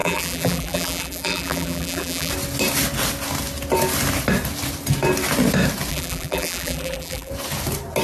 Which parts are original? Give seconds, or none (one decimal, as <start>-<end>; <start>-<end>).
2.3-5.9; 7.3-8.0